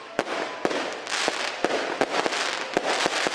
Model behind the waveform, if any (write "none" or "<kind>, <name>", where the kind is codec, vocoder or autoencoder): none